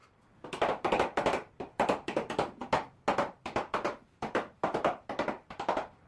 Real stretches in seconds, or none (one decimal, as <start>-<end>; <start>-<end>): 0.0-1.5; 2.6-3.3